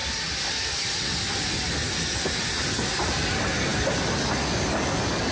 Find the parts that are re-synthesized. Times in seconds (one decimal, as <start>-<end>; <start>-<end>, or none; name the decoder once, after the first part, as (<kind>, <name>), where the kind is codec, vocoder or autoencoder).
none